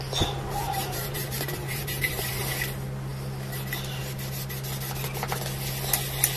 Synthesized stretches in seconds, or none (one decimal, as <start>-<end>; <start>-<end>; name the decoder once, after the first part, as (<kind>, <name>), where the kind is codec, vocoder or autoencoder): 0.6-2.4 (vocoder, BigVGAN v2)